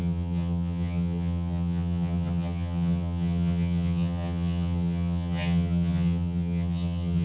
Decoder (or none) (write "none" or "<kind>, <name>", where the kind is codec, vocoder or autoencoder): vocoder, HiFi-GAN